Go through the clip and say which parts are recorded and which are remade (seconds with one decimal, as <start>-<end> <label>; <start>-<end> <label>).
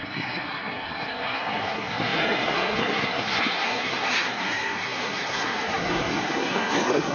0.0-7.1 remade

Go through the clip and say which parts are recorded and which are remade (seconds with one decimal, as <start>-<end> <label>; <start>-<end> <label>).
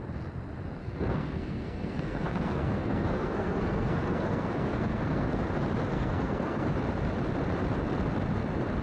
0.0-0.8 recorded; 0.8-5.4 remade; 5.4-5.9 recorded; 5.9-6.7 remade; 6.7-8.8 recorded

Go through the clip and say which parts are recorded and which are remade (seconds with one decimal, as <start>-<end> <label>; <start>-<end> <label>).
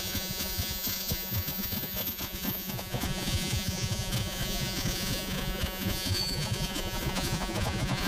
0.0-8.1 remade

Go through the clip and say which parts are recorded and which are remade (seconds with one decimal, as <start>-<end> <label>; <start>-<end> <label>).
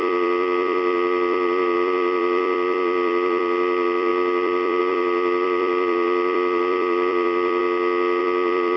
0.0-7.6 remade; 7.6-8.2 recorded; 8.2-8.8 remade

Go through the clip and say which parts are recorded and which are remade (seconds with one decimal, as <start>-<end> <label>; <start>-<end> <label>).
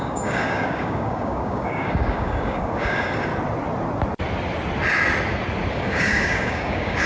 0.0-3.3 remade; 3.3-5.7 recorded; 5.7-7.1 remade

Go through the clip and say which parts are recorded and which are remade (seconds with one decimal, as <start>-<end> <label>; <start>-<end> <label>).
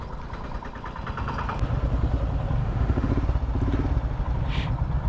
0.0-2.6 recorded; 2.6-3.1 remade; 3.1-5.1 recorded